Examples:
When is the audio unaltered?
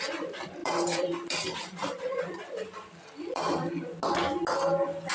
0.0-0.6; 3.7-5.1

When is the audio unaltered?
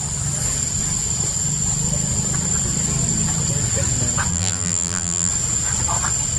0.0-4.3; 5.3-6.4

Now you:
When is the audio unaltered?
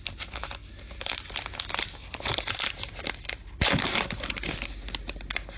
0.0-5.6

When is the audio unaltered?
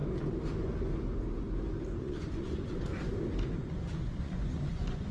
0.0-2.0; 2.9-3.6